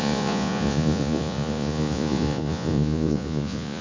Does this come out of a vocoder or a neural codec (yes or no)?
yes